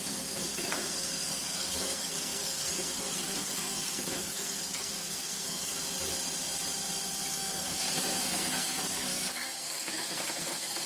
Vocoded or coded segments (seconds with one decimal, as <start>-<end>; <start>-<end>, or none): 0.0-5.7; 7.3-10.9